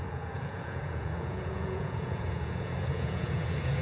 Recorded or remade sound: remade